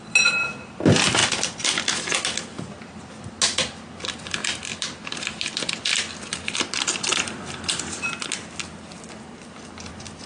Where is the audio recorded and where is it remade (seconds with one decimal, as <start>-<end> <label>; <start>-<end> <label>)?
0.0-1.2 recorded; 1.2-2.9 remade; 2.9-4.4 recorded; 4.4-5.7 remade; 5.7-10.3 recorded